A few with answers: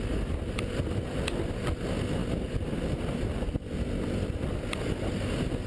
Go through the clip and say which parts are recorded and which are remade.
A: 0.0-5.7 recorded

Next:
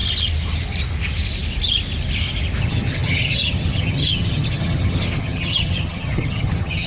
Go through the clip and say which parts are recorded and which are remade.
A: 0.0-2.6 recorded; 2.6-6.9 remade

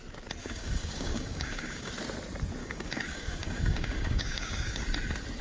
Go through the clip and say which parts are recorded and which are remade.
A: 0.0-0.4 recorded; 0.4-1.9 remade; 1.9-2.6 recorded; 2.6-4.8 remade; 4.8-5.4 recorded

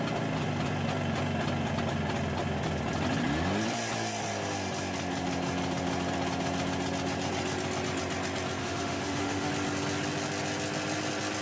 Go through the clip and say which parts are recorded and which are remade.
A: 0.0-8.6 recorded; 8.6-9.5 remade; 9.5-11.4 recorded

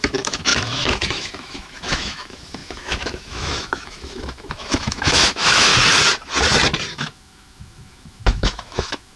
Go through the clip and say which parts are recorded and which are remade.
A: 0.0-5.7 remade; 5.7-6.9 recorded; 6.9-9.2 remade

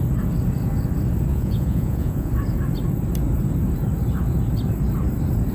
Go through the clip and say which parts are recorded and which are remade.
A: 0.0-1.3 recorded; 1.3-2.3 remade; 2.3-5.5 recorded

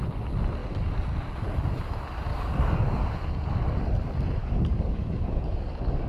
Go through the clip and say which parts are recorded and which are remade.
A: 0.0-2.3 recorded; 2.3-3.0 remade; 3.0-4.4 recorded; 4.4-6.1 remade

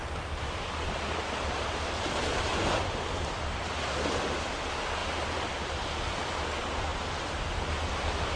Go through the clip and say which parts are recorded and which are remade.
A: 0.0-8.4 recorded